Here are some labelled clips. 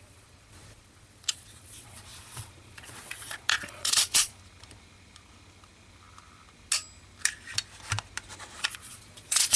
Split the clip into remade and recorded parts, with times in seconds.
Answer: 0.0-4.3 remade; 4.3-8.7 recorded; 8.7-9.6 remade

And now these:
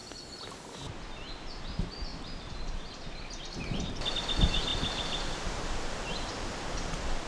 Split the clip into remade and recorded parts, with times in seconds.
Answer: 0.0-4.7 remade; 4.7-6.1 recorded; 6.1-7.3 remade

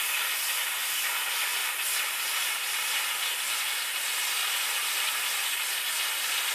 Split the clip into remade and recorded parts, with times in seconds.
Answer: 0.0-6.5 recorded

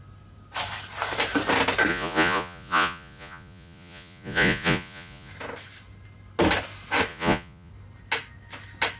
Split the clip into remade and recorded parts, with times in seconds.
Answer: 0.0-1.9 recorded; 1.9-5.3 remade; 5.3-7.1 recorded; 7.1-7.7 remade; 7.7-9.0 recorded